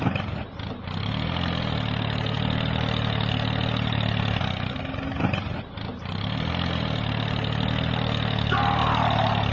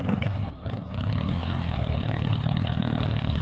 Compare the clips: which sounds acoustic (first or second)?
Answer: first